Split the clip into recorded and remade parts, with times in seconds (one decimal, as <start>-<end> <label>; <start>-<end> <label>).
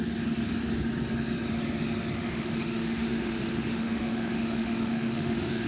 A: 0.0-2.2 recorded; 2.2-5.7 remade